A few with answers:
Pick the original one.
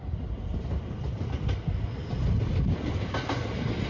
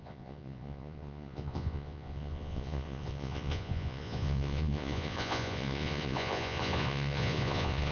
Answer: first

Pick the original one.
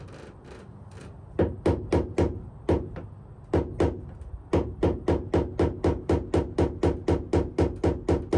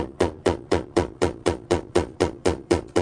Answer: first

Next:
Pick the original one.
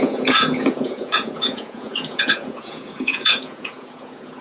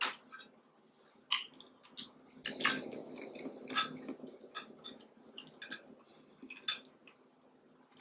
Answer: second